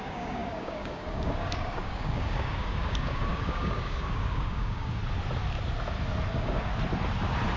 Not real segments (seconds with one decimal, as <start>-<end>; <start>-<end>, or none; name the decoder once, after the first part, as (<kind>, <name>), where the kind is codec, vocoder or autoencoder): 0.0-5.0 (codec, DAC); 6.3-6.7